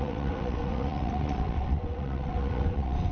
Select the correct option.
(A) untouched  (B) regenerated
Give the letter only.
B